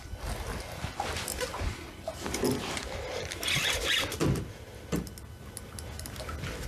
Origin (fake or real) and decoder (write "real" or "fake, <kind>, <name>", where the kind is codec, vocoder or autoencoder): real